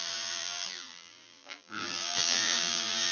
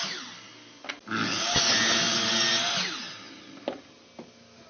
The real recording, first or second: second